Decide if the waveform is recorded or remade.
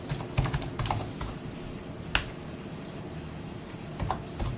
recorded